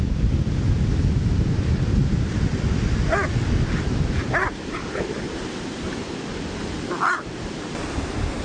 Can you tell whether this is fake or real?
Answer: real